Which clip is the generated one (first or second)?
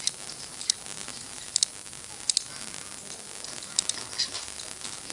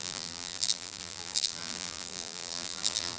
second